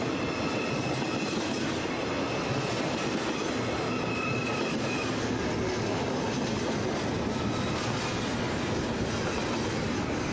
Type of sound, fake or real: real